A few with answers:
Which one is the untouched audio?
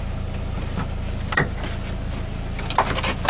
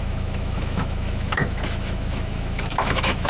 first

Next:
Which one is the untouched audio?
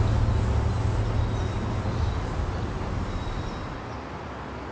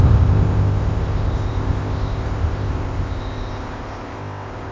first